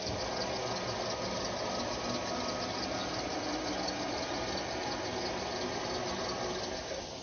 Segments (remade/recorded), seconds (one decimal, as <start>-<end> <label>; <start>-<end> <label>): 0.0-7.2 recorded